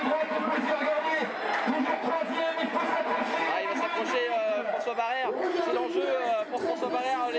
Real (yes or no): yes